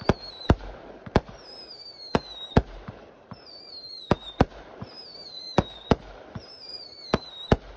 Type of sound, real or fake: fake